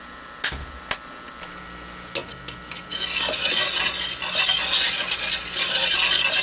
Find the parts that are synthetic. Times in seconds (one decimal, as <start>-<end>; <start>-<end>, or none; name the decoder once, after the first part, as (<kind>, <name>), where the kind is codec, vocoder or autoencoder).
none